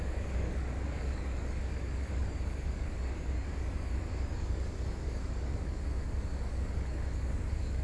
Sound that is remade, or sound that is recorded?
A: remade